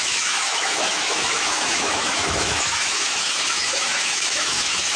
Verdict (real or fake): fake